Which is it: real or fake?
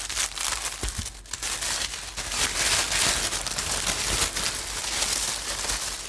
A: real